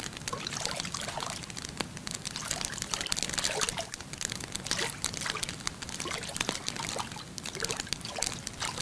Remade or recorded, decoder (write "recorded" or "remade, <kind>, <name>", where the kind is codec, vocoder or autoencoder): recorded